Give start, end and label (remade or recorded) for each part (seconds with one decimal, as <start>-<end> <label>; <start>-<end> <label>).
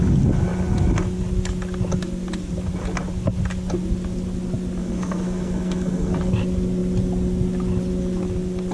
0.0-4.8 recorded; 4.8-6.3 remade; 6.3-8.7 recorded